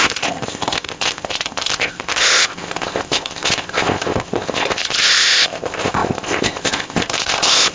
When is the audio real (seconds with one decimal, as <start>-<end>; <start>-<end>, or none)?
none

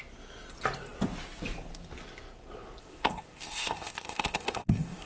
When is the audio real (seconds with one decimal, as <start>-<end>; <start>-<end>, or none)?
0.0-2.8